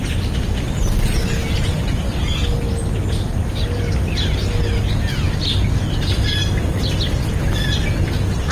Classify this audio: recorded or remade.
recorded